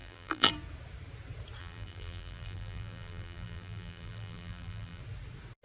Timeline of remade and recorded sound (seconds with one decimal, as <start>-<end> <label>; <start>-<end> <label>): 0.0-0.5 remade; 0.5-1.6 recorded; 1.6-5.0 remade; 5.0-5.6 recorded